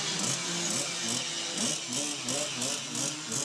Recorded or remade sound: recorded